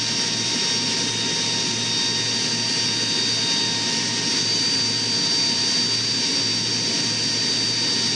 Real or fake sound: real